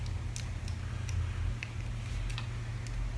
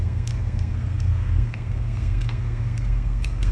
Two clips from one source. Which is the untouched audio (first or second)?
first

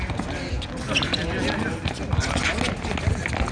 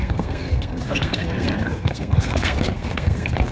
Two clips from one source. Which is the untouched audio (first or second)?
first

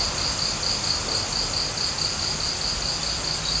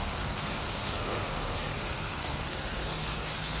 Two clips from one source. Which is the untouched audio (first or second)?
first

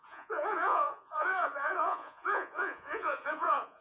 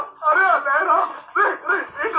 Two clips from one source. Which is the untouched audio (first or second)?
second